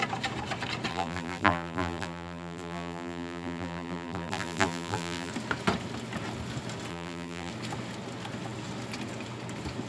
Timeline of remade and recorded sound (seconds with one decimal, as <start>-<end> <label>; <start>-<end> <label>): 0.0-0.9 recorded; 0.9-5.3 remade; 5.3-6.9 recorded; 6.9-7.5 remade; 7.5-9.9 recorded